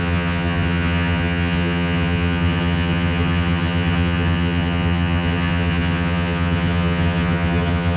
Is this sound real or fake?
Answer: fake